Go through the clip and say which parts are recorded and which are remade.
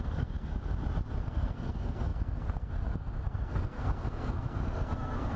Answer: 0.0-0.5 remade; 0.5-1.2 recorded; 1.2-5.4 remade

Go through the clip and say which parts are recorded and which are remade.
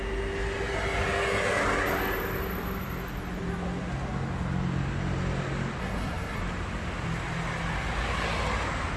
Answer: 0.0-5.8 recorded; 5.8-6.4 remade; 6.4-9.0 recorded